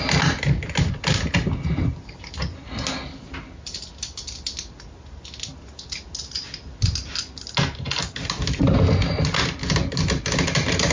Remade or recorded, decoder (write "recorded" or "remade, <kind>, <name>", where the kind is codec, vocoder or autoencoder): recorded